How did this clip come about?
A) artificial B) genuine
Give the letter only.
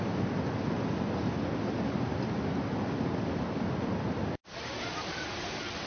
B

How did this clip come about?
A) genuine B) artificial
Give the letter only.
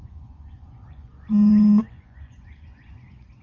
B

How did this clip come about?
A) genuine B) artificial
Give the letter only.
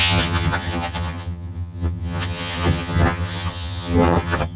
B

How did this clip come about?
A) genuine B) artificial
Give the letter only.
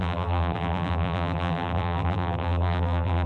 B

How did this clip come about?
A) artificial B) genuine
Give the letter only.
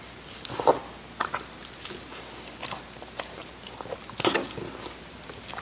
B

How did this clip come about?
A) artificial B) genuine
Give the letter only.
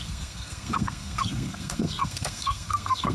A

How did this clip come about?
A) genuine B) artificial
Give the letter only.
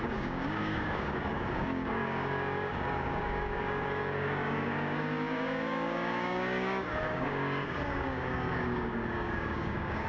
B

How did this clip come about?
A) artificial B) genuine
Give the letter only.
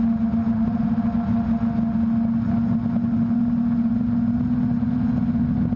B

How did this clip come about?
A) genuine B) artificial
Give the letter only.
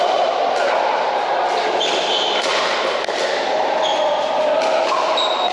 A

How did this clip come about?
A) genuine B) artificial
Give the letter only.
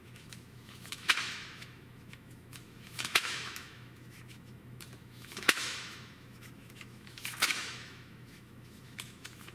B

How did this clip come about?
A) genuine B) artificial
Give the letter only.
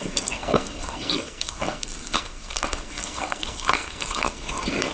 B